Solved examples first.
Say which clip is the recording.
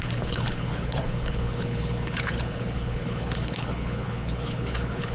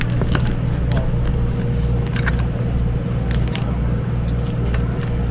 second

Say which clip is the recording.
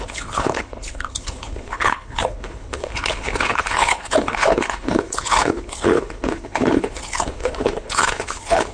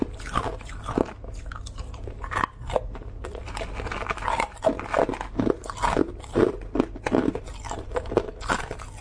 second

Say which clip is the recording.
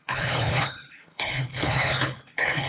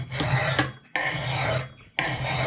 second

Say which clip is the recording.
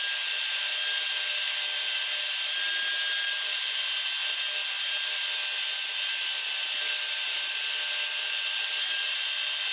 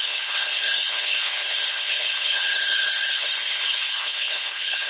first